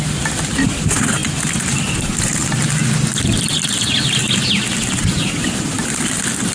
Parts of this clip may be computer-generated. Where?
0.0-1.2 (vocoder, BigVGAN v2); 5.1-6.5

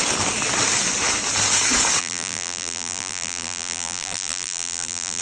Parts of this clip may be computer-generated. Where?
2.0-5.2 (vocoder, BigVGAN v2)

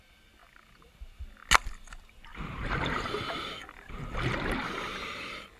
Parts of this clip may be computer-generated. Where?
2.3-3.2 (vocoder, BigVGAN v2); 3.6-4.2